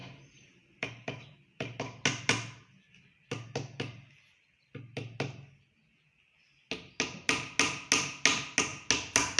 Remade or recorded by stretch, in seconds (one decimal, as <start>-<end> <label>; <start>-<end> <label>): 0.0-1.8 remade; 1.8-9.4 recorded

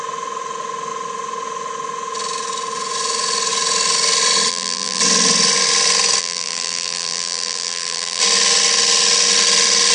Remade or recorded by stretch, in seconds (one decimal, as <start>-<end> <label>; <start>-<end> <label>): 0.0-4.5 recorded; 4.5-5.0 remade; 5.0-6.2 recorded; 6.2-8.2 remade; 8.2-9.9 recorded

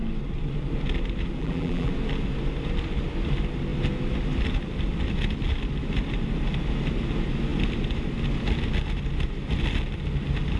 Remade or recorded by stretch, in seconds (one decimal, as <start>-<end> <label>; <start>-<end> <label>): 0.0-1.4 recorded; 1.4-1.9 remade; 1.9-10.6 recorded